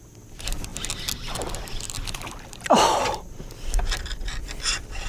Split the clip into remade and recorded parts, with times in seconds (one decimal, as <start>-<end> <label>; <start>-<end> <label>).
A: 0.0-5.1 recorded